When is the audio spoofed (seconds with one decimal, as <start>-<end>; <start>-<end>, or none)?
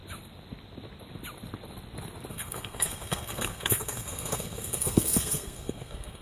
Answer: 2.3-6.2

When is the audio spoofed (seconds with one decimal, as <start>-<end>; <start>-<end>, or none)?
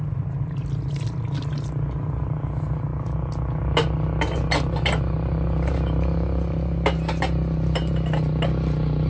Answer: none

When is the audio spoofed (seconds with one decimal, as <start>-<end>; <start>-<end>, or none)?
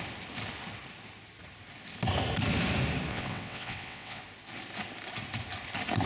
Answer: 3.1-4.2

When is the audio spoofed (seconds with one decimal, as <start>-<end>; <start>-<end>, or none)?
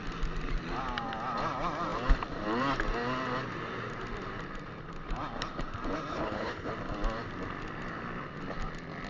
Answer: 6.1-6.7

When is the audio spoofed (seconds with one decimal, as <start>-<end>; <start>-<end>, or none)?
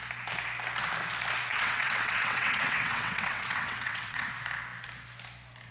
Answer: 1.5-4.3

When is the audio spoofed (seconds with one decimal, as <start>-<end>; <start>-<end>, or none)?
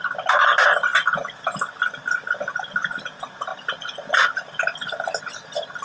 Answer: none